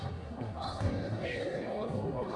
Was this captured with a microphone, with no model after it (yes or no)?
no